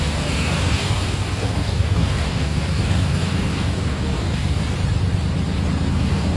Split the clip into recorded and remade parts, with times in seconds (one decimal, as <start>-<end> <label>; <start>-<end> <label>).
0.0-4.6 remade; 4.6-5.9 recorded; 5.9-6.4 remade